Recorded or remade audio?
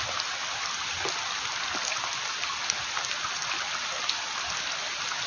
recorded